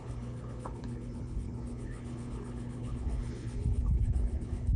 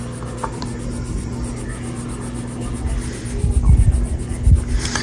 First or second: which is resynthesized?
first